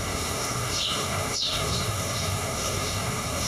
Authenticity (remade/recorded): remade